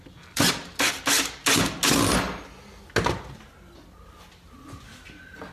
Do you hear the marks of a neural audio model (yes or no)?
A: no